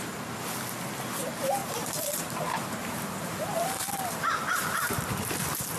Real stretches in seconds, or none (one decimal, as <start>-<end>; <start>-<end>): 0.0-1.6; 5.1-5.8